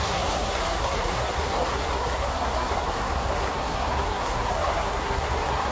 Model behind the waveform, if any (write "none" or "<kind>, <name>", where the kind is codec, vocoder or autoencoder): codec, SNAC